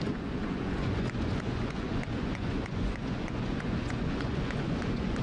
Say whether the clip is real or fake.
fake